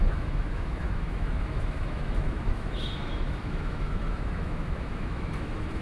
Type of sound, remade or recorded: remade